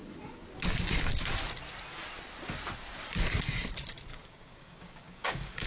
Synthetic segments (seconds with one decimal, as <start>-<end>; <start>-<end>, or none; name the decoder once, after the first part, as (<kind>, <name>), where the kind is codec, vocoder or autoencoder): 4.1-5.7 (codec, DAC)